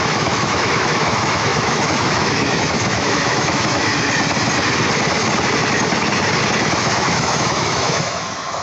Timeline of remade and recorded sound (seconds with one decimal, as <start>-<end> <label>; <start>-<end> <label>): 0.0-3.9 remade; 3.9-6.8 recorded; 6.8-8.6 remade